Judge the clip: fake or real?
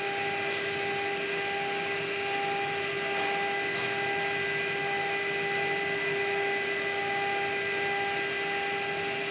real